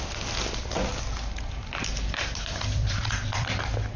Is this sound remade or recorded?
remade